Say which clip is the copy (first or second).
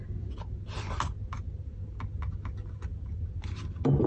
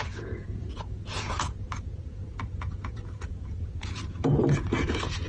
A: second